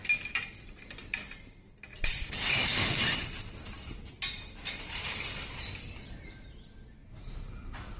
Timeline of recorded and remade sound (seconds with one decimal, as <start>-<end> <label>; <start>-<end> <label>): 0.0-1.9 recorded; 1.9-4.1 remade; 4.1-8.0 recorded